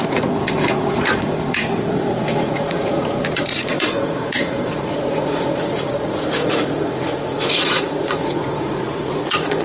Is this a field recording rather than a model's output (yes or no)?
no